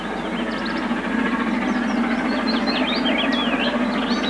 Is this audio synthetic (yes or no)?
no